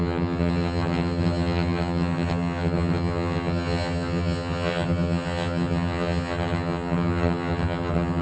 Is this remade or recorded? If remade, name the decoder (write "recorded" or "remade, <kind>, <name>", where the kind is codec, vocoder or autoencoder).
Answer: remade, vocoder, HiFi-GAN